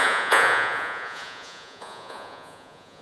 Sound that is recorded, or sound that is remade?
remade